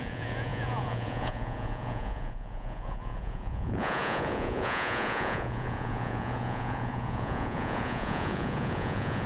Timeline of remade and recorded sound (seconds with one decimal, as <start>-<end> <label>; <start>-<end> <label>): 0.0-9.3 remade

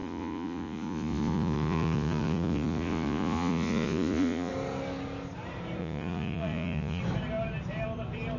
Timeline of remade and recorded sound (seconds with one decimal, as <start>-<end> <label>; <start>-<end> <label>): 0.0-4.5 remade; 4.5-5.8 recorded; 5.8-7.0 remade; 7.0-8.4 recorded

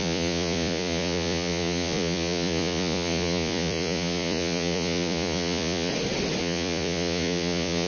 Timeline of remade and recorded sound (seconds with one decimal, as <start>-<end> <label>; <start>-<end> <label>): 0.0-5.9 remade; 5.9-6.4 recorded; 6.4-7.9 remade

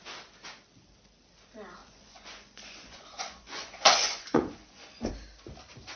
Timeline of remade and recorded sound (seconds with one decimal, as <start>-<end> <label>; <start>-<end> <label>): 0.0-1.8 recorded; 1.8-5.1 remade; 5.1-6.0 recorded

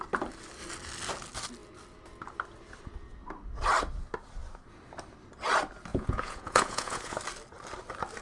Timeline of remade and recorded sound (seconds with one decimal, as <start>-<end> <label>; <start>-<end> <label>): 0.0-5.9 recorded; 5.9-7.2 remade; 7.2-8.2 recorded